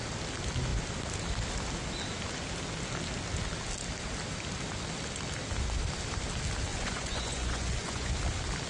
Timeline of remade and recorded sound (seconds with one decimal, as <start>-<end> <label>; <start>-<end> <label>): 0.0-6.7 recorded; 6.7-8.1 remade; 8.1-8.7 recorded